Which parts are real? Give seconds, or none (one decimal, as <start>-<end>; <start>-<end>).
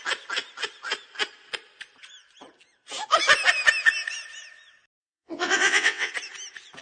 0.0-5.0; 6.1-6.8